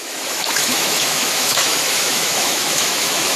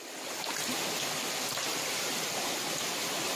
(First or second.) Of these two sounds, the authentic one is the second